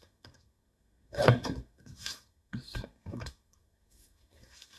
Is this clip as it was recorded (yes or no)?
no